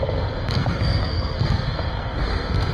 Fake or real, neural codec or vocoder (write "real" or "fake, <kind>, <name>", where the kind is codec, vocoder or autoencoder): fake, codec, SNAC